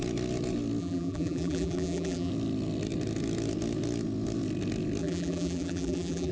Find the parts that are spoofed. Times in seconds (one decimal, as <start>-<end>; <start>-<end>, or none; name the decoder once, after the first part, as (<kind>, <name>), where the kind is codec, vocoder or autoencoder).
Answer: 0.8-2.3 (vocoder, BigVGAN v2); 5.0-6.3